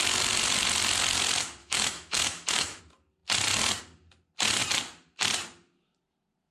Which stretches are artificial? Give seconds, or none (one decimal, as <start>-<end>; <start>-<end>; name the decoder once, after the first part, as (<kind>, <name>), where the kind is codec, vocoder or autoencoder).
1.6-2.8 (autoencoder, DAC-VAE)